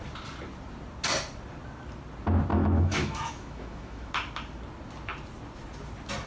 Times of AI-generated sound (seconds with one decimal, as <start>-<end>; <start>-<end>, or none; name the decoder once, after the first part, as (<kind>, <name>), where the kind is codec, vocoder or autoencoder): 2.5-4.1 (autoencoder, DAC-VAE)